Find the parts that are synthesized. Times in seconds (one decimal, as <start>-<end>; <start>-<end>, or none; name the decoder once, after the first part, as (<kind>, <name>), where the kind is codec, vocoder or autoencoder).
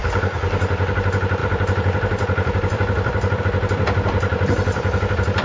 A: 1.4-3.4 (vocoder, BigVGAN v2); 4.3-5.4